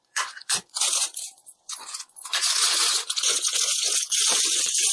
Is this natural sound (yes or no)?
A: no